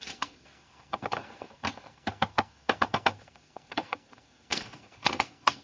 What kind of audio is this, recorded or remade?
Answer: remade